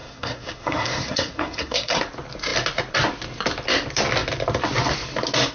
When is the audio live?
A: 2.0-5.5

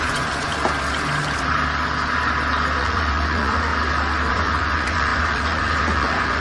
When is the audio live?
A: 0.5-2.8; 3.7-4.3

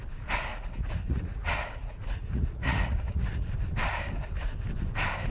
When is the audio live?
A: 0.0-0.5; 3.5-5.3

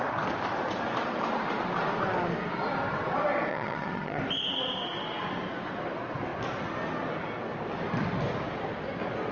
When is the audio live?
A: 0.0-3.5; 4.2-9.3

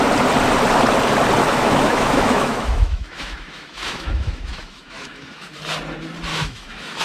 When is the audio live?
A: 0.0-1.4; 5.6-6.3

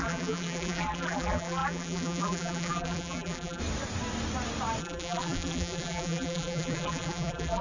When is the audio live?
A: 3.6-4.8

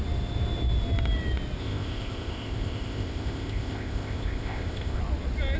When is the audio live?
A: 0.0-1.6; 5.0-5.6